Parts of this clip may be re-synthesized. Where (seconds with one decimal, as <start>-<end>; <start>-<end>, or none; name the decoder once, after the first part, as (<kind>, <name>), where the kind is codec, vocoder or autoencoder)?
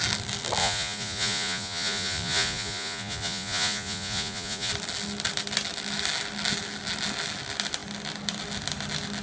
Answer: 0.6-4.7 (vocoder, Vocos)